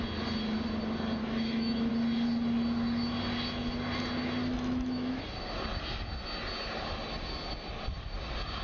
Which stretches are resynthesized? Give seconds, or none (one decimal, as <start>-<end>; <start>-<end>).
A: 1.2-1.9; 4.4-5.2